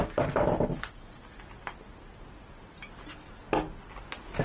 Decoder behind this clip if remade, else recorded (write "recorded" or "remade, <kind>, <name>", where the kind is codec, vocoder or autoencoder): recorded